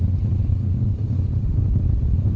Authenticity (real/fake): real